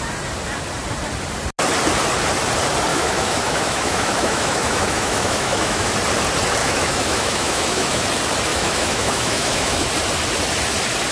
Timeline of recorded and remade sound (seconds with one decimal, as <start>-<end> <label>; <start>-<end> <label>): 0.0-2.9 recorded; 2.9-5.9 remade; 5.9-6.6 recorded; 6.6-8.0 remade; 8.0-8.5 recorded; 8.5-9.9 remade; 9.9-11.1 recorded